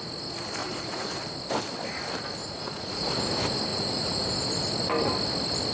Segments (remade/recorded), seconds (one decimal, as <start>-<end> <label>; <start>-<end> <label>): 0.0-0.6 recorded; 0.6-1.2 remade; 1.2-2.4 recorded; 2.4-3.1 remade; 3.1-3.7 recorded; 3.7-4.4 remade; 4.4-5.7 recorded